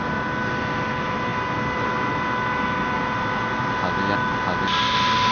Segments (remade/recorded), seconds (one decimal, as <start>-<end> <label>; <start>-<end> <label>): 0.0-5.3 recorded